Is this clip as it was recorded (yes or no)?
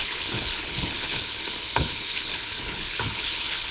no